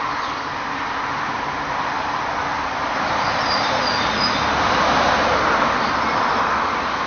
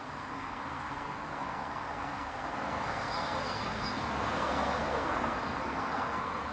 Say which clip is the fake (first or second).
second